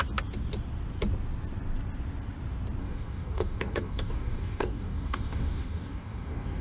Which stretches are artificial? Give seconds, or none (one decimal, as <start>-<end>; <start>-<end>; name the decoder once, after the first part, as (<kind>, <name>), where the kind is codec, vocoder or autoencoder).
2.8-6.6 (codec, DAC)